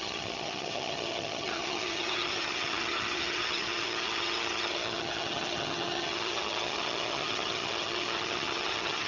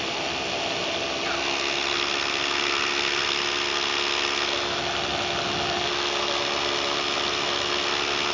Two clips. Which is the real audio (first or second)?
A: second